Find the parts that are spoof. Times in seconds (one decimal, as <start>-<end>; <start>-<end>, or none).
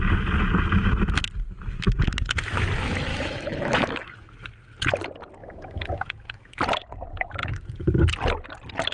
3.1-4.3; 5.4-6.6; 7.4-8.0